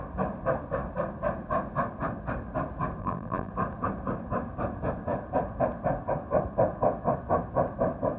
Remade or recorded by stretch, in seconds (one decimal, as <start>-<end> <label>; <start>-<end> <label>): 0.0-3.0 recorded; 3.0-3.5 remade; 3.5-8.2 recorded